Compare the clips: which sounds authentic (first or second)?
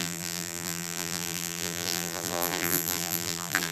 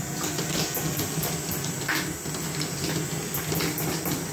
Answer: second